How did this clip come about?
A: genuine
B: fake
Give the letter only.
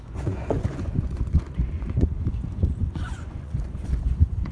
B